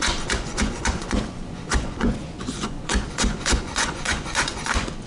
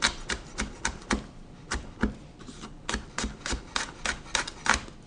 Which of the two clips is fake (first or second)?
first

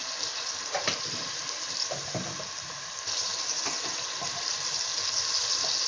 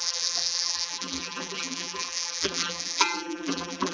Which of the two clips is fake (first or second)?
second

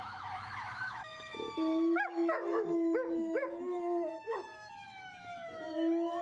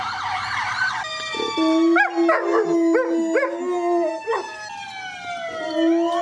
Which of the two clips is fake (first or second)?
first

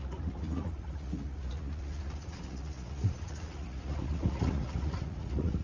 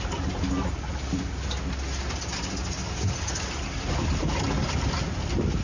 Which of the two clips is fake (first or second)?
first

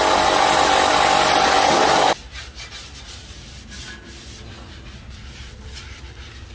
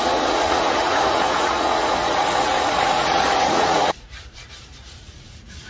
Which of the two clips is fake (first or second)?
second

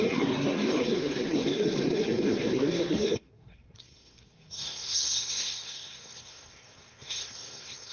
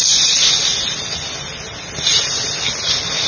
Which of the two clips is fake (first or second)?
first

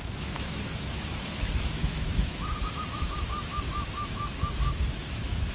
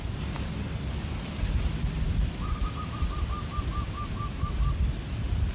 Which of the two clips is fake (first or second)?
first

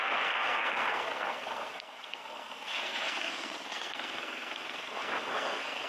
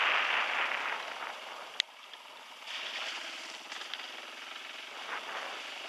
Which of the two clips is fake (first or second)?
first